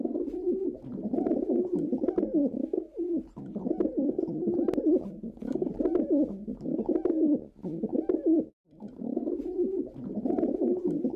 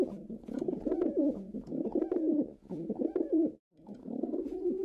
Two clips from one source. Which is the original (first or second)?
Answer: first